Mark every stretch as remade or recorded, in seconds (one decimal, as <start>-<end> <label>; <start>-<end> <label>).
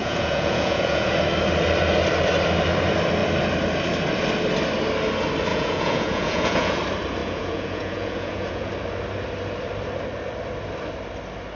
0.0-1.1 remade; 1.1-5.5 recorded; 5.5-6.8 remade; 6.8-7.2 recorded; 7.2-8.7 remade; 8.7-11.5 recorded